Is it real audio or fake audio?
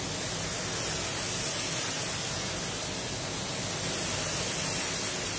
real